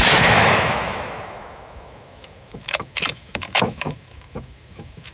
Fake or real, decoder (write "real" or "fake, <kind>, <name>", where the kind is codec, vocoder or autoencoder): fake, autoencoder, DAC-VAE